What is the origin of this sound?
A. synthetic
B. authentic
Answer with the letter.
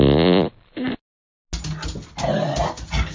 B